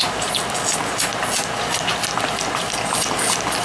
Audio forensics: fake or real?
real